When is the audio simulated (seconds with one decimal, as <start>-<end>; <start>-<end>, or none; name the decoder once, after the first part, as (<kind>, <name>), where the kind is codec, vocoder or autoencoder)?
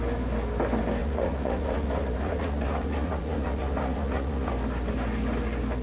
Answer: 1.0-4.5 (vocoder, Vocos)